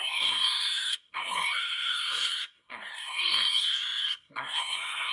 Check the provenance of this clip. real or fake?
fake